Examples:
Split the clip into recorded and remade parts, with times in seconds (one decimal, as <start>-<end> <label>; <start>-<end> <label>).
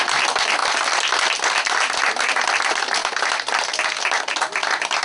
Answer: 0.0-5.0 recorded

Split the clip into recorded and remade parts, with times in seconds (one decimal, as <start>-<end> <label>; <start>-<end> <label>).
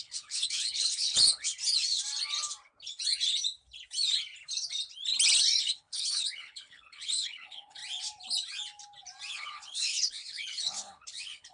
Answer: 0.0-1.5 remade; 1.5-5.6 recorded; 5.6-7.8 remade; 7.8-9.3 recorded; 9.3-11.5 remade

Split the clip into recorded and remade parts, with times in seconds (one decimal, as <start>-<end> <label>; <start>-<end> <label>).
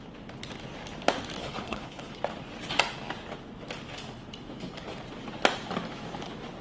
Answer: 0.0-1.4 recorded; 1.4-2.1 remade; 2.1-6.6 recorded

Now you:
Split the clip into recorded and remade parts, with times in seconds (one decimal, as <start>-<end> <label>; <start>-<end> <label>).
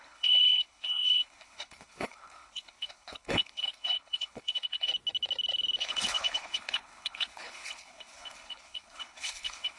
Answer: 0.0-4.9 remade; 4.9-5.8 recorded; 5.8-9.8 remade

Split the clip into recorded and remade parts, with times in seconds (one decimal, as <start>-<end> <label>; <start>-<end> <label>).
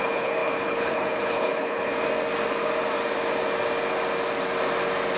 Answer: 0.0-1.9 remade; 1.9-5.2 recorded